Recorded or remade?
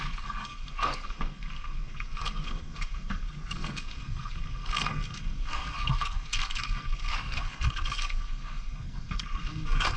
remade